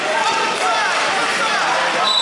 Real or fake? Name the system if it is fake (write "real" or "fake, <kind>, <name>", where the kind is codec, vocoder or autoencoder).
fake, vocoder, BigVGAN v2